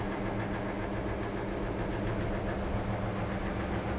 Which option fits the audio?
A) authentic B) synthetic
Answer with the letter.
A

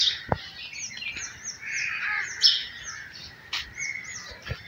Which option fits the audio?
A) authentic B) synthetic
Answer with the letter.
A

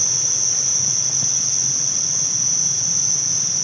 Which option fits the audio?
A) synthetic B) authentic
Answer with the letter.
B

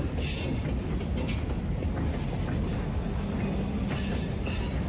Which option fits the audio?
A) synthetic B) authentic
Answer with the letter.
B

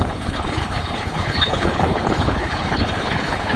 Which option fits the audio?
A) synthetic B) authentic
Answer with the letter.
A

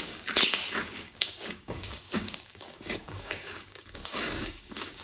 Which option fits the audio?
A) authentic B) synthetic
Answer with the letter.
B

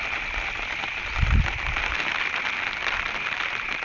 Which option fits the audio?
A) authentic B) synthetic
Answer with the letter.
A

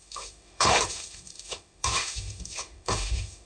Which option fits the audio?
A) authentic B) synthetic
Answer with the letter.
B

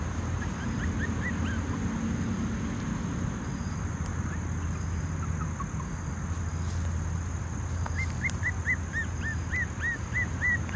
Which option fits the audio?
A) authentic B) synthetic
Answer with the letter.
A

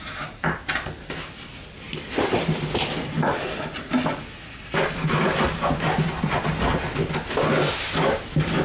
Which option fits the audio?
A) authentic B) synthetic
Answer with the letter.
A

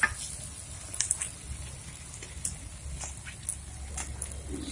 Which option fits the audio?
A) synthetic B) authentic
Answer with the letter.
B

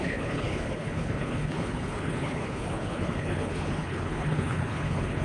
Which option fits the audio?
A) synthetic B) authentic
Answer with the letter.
A